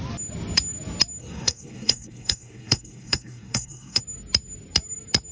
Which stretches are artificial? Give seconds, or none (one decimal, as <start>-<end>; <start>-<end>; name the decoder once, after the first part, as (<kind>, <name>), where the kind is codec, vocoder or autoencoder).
1.2-4.0 (codec, SNAC)